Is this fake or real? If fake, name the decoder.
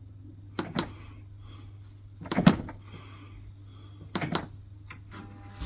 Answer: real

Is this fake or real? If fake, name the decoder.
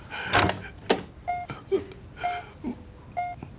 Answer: real